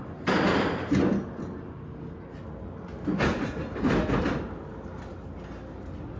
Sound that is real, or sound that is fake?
real